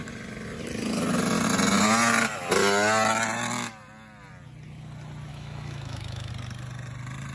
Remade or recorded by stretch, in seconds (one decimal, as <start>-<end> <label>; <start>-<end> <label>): 0.0-5.3 recorded; 5.3-6.3 remade; 6.3-7.3 recorded